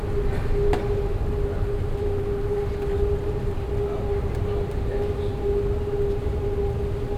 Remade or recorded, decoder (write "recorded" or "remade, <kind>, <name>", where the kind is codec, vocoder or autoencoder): recorded